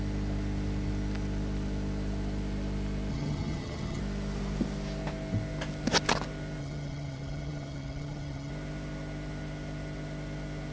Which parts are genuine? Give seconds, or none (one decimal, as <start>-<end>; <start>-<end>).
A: 0.0-3.1; 4.0-6.6; 8.5-10.7